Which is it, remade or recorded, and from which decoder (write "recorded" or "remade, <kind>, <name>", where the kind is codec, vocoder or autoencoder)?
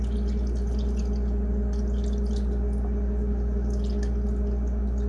recorded